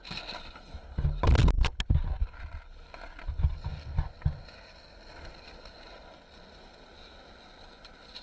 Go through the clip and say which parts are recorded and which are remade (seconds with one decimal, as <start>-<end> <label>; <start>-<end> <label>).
0.0-8.2 recorded